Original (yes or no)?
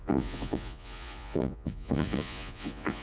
no